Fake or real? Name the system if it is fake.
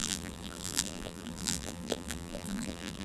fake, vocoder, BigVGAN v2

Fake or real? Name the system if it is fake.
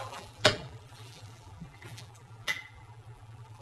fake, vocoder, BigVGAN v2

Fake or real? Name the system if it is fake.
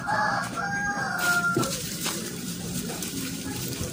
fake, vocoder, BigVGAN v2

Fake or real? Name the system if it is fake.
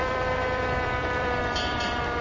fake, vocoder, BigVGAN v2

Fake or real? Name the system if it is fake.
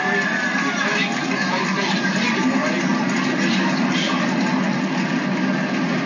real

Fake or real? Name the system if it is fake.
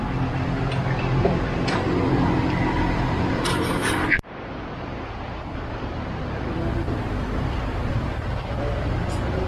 fake, vocoder, BigVGAN v2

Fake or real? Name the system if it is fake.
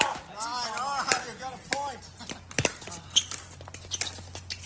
real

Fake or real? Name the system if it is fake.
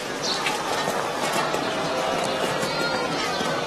real